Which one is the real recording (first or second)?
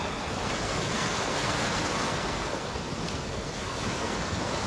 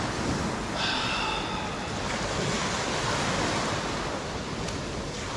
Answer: second